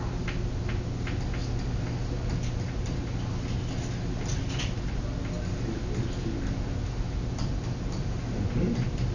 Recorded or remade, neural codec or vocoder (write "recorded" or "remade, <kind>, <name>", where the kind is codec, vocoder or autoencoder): recorded